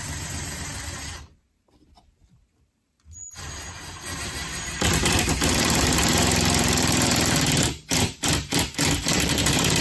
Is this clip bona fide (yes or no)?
no